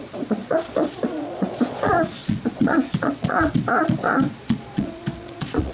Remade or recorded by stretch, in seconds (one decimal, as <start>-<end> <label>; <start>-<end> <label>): 0.0-5.7 remade